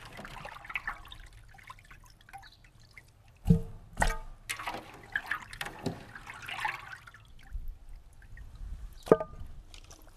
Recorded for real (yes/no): yes